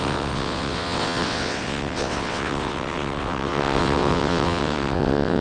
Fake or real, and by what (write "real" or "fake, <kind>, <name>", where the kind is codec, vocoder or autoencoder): fake, vocoder, WaveNeXt